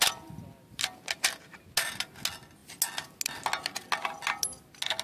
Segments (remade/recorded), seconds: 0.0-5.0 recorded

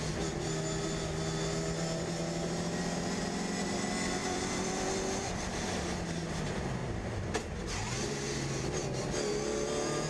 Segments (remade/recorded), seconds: 0.0-4.2 recorded; 4.2-5.7 remade; 5.7-6.8 recorded; 6.8-7.7 remade; 7.7-10.1 recorded

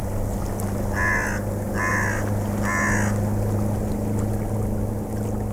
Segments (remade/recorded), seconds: 0.0-5.5 recorded